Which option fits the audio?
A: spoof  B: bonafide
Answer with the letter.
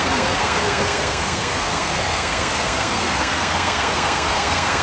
A